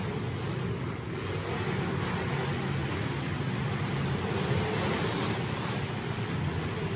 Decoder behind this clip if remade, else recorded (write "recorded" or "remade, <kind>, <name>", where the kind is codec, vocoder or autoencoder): recorded